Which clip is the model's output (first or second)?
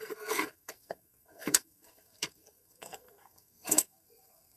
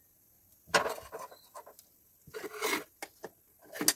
first